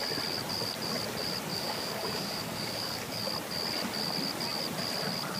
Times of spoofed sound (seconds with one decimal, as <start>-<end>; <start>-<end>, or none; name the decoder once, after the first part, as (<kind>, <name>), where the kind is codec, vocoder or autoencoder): 1.5-3.2 (codec, DAC)